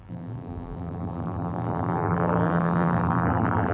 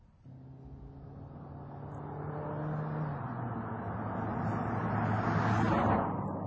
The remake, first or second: first